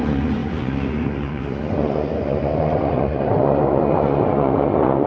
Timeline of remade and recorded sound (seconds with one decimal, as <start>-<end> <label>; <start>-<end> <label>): 0.0-5.1 remade